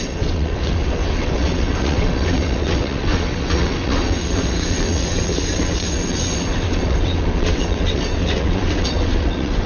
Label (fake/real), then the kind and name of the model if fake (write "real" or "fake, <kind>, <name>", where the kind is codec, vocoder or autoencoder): fake, vocoder, WaveNeXt